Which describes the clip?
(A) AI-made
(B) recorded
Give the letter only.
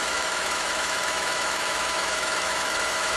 A